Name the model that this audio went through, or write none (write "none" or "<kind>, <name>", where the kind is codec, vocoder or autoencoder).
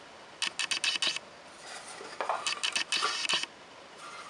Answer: none